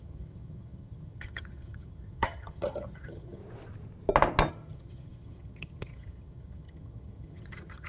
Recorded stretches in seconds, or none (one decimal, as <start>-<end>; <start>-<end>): 3.4-4.5